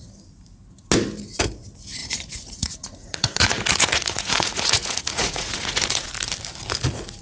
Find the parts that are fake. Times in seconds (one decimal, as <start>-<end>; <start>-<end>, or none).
2.0-6.1